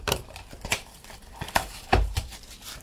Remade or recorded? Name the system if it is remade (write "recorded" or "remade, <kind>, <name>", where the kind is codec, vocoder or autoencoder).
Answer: remade, vocoder, BigVGAN v2